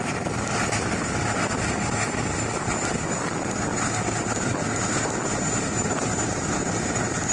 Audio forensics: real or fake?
real